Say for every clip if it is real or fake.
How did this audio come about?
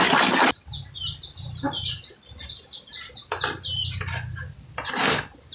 real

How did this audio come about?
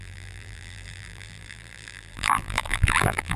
fake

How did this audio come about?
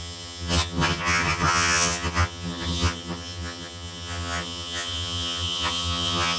fake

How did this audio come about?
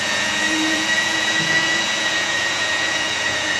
fake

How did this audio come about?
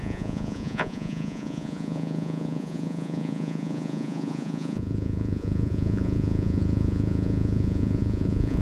fake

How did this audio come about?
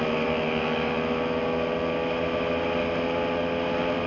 real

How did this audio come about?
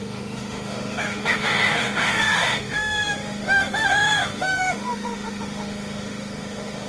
fake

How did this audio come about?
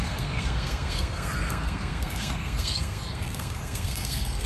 fake